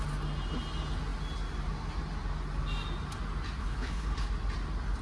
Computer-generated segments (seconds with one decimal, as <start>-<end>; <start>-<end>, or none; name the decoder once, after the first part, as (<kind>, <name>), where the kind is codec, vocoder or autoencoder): 3.6-4.3 (codec, HILCodec)